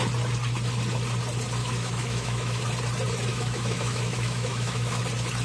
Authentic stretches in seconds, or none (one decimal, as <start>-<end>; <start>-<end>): 0.0-1.6; 2.6-3.3; 5.0-5.4